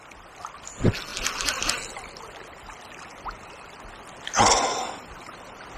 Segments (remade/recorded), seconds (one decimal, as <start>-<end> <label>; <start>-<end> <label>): 0.0-5.8 recorded